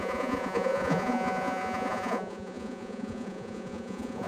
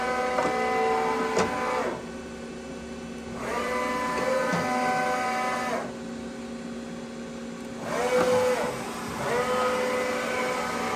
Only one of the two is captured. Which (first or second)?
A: second